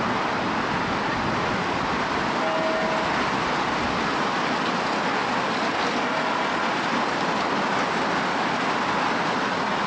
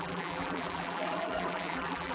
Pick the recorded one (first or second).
first